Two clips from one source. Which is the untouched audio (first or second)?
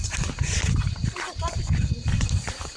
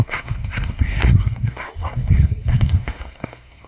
first